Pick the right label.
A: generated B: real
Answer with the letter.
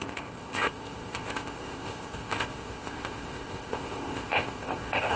A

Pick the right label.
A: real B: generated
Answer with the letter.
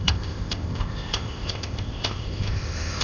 B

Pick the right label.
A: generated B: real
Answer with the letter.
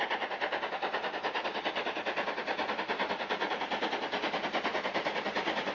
B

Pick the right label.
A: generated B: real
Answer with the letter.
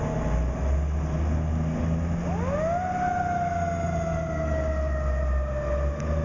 B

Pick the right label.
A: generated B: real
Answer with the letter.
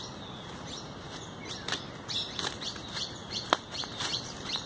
B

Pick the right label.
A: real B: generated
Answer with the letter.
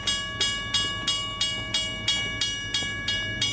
A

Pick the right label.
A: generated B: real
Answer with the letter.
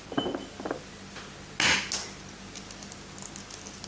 B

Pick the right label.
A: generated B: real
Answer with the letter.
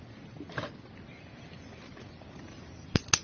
B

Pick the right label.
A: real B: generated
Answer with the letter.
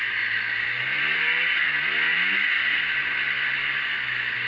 A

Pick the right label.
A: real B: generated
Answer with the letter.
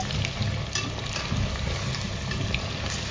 A